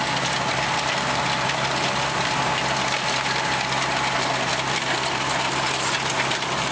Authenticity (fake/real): real